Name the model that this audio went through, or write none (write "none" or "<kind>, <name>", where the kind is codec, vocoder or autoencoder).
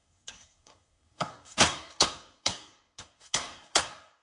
codec, SNAC